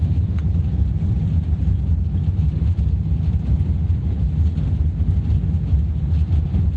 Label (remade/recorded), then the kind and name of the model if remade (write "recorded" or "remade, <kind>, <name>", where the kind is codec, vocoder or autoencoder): recorded